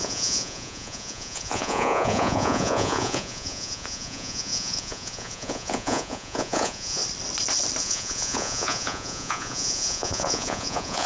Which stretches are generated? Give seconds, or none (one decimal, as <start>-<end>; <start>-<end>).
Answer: 0.0-7.0; 7.8-11.1